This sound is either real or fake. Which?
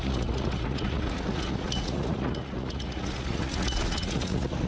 fake